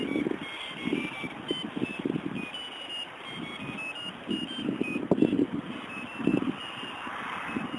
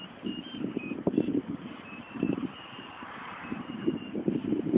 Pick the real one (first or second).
first